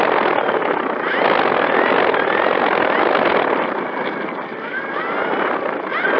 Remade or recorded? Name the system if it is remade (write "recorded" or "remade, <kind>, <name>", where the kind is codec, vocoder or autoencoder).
recorded